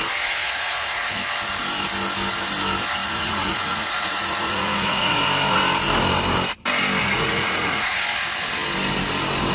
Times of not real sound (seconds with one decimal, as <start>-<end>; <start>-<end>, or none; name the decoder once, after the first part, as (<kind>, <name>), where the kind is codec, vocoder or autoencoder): 0.4-1.2 (vocoder, Vocos); 3.0-5.2; 7.0-8.0